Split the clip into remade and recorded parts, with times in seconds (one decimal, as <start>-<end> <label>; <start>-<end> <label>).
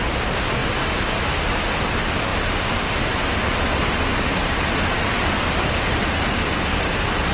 0.0-7.3 recorded